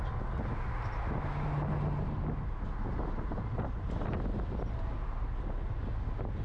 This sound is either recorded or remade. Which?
recorded